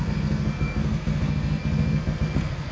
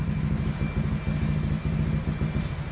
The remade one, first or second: first